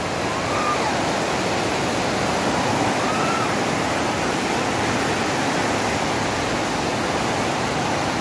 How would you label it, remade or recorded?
recorded